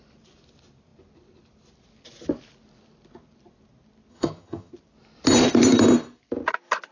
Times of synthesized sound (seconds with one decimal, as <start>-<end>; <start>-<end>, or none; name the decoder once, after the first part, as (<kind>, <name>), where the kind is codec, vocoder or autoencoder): 4.1-4.7 (vocoder, HiFi-GAN)